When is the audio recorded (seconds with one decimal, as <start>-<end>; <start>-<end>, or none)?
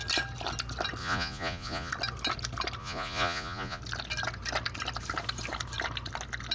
0.0-1.0; 1.9-2.8; 3.8-6.5